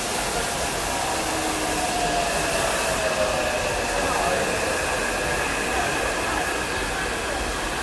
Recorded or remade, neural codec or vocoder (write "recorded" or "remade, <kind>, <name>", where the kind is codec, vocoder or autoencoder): recorded